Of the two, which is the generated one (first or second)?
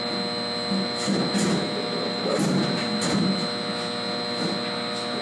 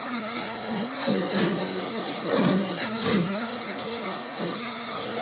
second